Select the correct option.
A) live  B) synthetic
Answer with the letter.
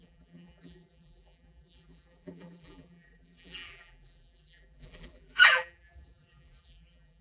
B